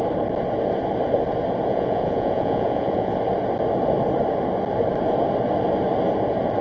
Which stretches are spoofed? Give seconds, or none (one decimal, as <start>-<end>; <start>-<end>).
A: 1.7-3.2